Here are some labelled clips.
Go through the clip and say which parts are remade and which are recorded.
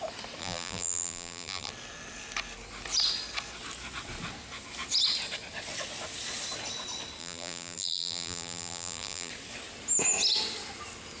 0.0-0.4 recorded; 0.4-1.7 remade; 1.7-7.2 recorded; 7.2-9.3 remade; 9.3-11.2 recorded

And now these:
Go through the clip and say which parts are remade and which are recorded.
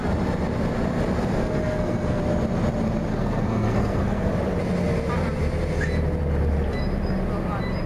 0.0-1.4 recorded; 1.4-2.2 remade; 2.2-3.1 recorded; 3.1-4.3 remade; 4.3-7.9 recorded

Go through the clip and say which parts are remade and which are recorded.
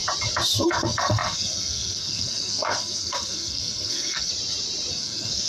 0.0-0.6 recorded; 0.6-4.3 remade; 4.3-4.9 recorded; 4.9-5.5 remade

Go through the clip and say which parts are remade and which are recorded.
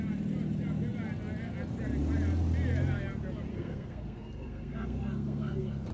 0.0-3.5 recorded; 3.5-5.9 remade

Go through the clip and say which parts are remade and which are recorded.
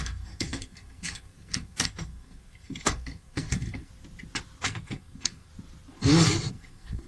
0.0-3.9 remade; 3.9-4.6 recorded; 4.6-5.5 remade; 5.5-6.5 recorded; 6.5-7.1 remade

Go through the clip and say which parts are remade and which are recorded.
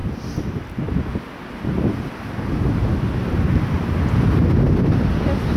0.0-5.6 recorded